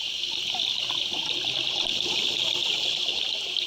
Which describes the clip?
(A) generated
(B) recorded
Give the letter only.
B